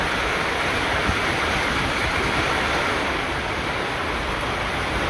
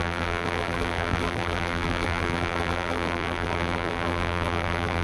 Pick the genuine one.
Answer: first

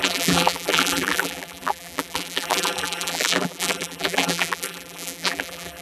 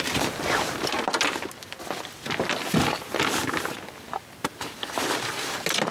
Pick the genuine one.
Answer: second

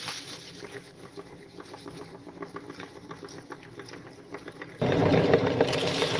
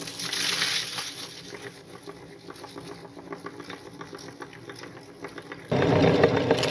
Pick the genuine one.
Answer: second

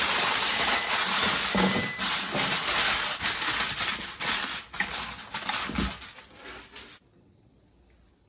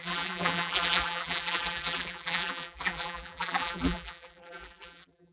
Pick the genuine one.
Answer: first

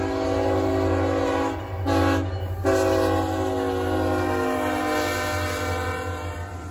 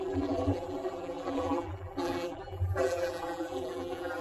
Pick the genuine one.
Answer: first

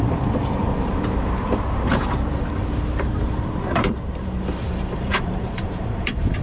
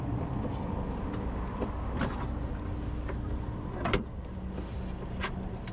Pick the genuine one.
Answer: second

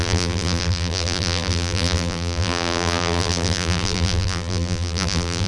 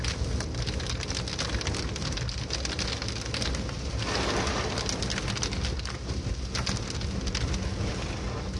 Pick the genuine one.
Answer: second